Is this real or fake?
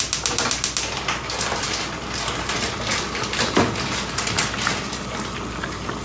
real